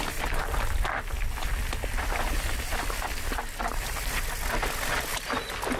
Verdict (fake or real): real